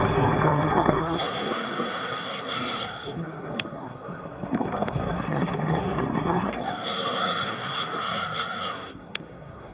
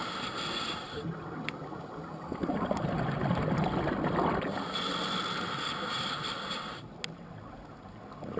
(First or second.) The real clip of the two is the second